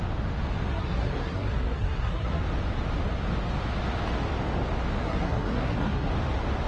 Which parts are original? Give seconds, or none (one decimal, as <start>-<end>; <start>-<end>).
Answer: 0.0-0.7; 2.4-5.0; 6.1-6.7